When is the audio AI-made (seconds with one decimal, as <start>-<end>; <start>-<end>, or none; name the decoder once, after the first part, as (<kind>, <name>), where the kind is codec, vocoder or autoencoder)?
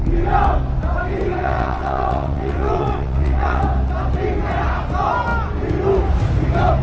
1.4-3.6 (vocoder, WaveNeXt)